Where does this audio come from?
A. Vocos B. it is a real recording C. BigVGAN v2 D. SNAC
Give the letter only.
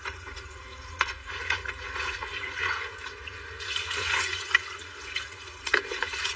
A